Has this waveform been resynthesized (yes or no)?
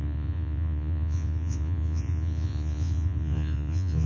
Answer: yes